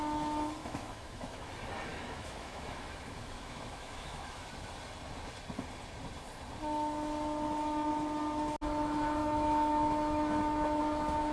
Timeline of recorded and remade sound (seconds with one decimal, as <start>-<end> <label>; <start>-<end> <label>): 0.0-0.6 recorded; 0.6-1.5 remade; 1.5-1.9 recorded; 1.9-4.5 remade; 4.5-9.2 recorded; 9.2-10.8 remade; 10.8-11.3 recorded